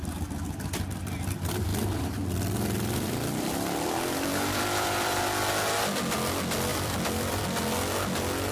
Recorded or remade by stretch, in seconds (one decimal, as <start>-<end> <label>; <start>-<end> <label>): 0.0-1.7 recorded; 1.7-5.2 remade; 5.2-6.7 recorded; 6.7-7.4 remade; 7.4-8.5 recorded

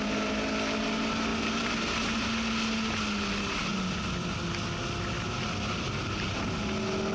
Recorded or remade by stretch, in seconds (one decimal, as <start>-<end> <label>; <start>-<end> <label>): 0.0-1.3 recorded; 1.3-2.2 remade; 2.2-7.1 recorded

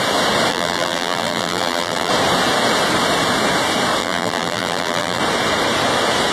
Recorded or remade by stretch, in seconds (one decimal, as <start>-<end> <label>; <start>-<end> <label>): 0.0-0.5 recorded; 0.5-2.1 remade; 2.1-4.0 recorded; 4.0-5.2 remade; 5.2-6.3 recorded

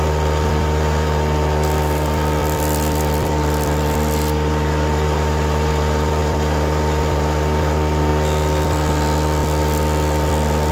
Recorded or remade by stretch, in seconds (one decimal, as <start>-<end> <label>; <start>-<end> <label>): 0.0-2.4 recorded; 2.4-5.7 remade; 5.7-10.7 recorded

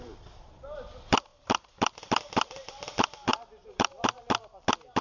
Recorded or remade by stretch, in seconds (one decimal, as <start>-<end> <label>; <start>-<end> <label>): 0.0-1.3 recorded; 1.3-2.2 remade; 2.2-3.3 recorded; 3.3-3.9 remade; 3.9-5.0 recorded

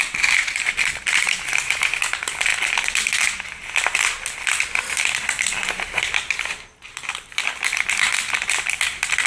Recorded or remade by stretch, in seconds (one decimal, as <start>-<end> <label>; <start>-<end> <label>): 0.0-2.5 remade; 2.5-5.0 recorded; 5.0-9.3 remade

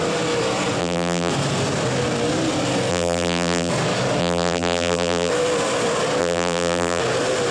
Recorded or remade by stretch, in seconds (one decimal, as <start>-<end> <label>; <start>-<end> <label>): 0.0-0.8 recorded; 0.8-1.3 remade; 1.3-2.9 recorded; 2.9-3.7 remade; 3.7-4.2 recorded; 4.2-5.3 remade; 5.3-6.2 recorded; 6.2-7.0 remade; 7.0-7.5 recorded

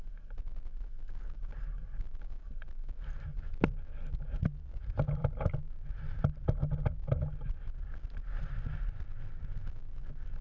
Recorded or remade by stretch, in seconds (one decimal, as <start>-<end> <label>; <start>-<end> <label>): 0.0-3.3 recorded; 3.3-5.5 remade; 5.5-10.4 recorded